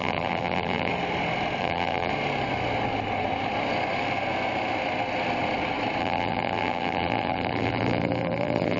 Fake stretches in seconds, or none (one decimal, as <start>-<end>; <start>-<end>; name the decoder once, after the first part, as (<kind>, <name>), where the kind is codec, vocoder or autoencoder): 0.0-0.9 (vocoder, BigVGAN v2); 1.6-2.1; 6.0-8.8